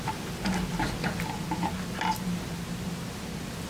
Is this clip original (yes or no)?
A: yes